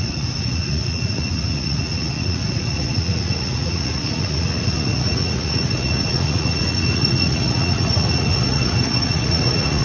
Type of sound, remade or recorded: remade